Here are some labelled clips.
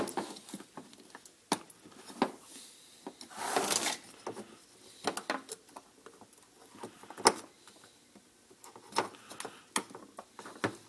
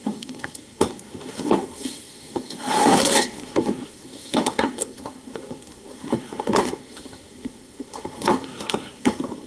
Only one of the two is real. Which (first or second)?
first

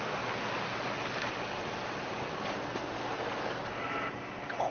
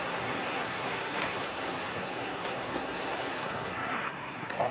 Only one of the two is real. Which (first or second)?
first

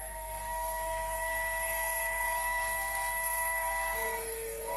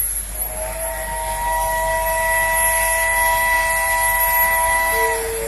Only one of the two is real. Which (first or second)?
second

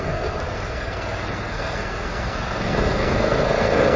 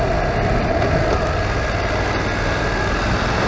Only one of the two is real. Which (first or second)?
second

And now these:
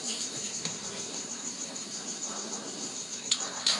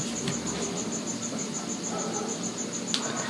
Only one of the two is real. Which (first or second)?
second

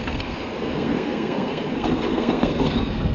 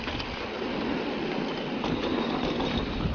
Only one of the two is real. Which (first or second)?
second